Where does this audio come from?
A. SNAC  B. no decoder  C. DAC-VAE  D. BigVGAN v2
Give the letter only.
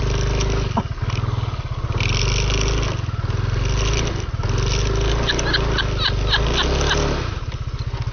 B